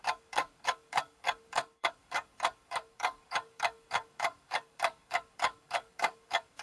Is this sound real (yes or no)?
no